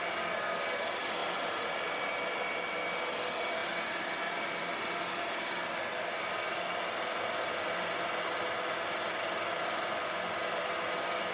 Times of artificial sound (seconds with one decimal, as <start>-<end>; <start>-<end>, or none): 1.2-2.4